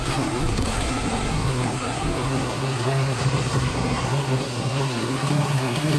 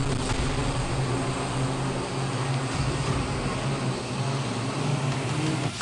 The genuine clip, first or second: second